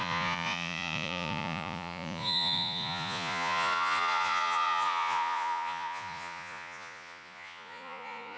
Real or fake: fake